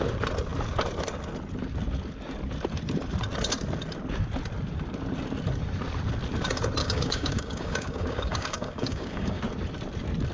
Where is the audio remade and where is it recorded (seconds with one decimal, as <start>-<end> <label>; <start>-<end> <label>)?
0.0-6.8 recorded; 6.8-9.4 remade; 9.4-10.3 recorded